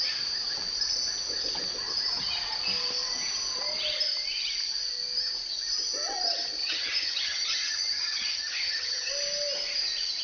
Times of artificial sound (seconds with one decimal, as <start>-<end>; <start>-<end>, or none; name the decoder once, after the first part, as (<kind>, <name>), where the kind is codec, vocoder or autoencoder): 6.6-9.1 (vocoder, HiFi-GAN)